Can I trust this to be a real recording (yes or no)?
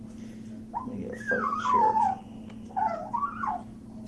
yes